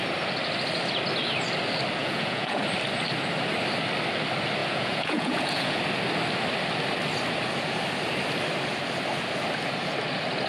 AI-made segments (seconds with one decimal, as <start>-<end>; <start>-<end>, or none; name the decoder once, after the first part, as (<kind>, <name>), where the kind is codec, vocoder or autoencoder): 2.0-2.6 (vocoder, Vocos); 4.6-5.8